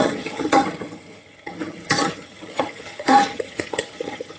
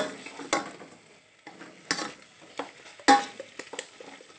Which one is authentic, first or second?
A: second